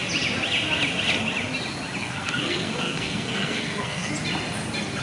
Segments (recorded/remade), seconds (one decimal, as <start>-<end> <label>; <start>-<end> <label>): 0.0-2.0 recorded; 2.0-4.1 remade; 4.1-5.0 recorded